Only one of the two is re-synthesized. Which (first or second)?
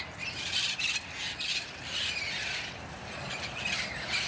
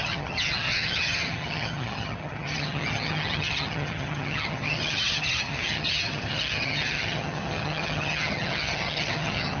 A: second